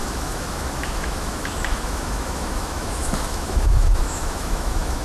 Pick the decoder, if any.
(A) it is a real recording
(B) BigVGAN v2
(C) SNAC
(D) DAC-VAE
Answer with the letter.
D